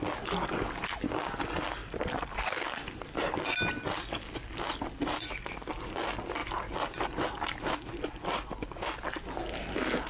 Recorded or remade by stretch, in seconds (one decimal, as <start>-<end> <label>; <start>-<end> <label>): 0.0-10.1 recorded